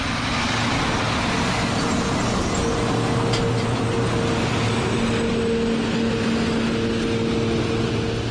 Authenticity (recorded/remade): recorded